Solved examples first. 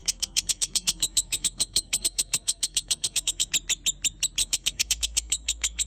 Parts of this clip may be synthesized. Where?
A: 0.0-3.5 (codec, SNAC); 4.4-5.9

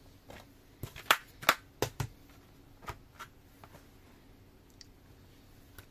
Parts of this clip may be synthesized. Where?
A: none

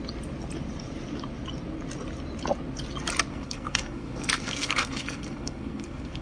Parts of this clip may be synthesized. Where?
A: 3.3-6.2 (codec, SNAC)